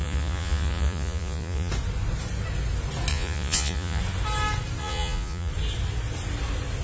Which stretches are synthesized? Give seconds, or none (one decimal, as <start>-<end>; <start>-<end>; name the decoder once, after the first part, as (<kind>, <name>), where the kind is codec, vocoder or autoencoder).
0.0-1.7 (vocoder, Vocos); 3.1-4.0; 4.8-5.5